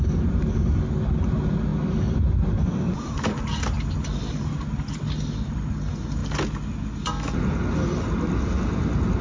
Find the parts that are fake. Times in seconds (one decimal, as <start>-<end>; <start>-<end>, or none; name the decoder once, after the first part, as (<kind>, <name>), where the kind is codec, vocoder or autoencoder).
none